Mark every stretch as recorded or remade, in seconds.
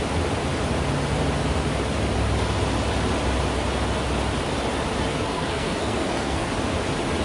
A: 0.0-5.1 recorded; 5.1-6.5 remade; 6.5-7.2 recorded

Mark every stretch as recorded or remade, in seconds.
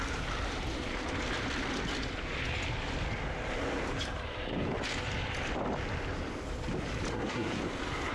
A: 0.0-7.1 recorded; 7.1-7.6 remade; 7.6-8.1 recorded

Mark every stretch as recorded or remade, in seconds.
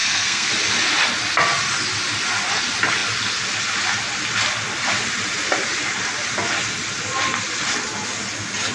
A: 0.0-0.5 remade; 0.5-8.7 recorded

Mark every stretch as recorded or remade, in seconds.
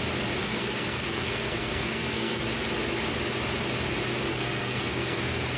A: 0.0-0.4 recorded; 0.4-2.4 remade; 2.4-4.3 recorded; 4.3-5.6 remade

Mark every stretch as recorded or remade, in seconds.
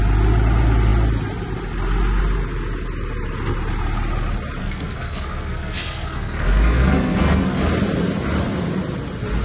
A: 0.0-4.6 recorded; 4.6-7.6 remade; 7.6-9.4 recorded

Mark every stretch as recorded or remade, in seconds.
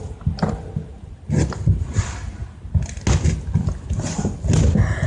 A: 0.0-5.1 recorded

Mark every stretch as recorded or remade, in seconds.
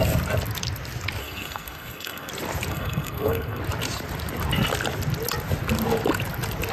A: 0.0-1.2 recorded; 1.2-2.3 remade; 2.3-2.7 recorded; 2.7-3.6 remade; 3.6-6.7 recorded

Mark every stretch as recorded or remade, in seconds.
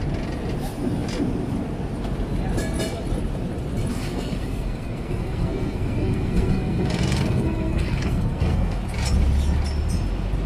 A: 0.0-3.9 recorded; 3.9-8.8 remade; 8.8-10.5 recorded